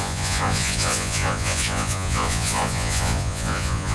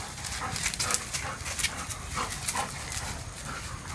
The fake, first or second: first